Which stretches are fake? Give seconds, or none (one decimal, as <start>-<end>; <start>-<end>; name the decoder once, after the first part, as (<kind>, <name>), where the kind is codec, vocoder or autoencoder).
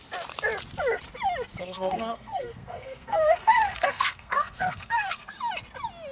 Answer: 1.6-5.3 (codec, SNAC)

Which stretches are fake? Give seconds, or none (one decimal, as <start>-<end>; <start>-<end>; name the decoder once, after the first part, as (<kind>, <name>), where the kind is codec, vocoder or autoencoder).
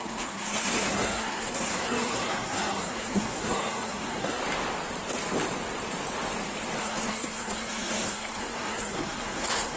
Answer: 0.0-4.4 (codec, SNAC); 6.8-9.8